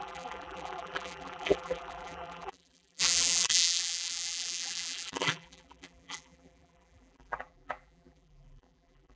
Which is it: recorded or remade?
remade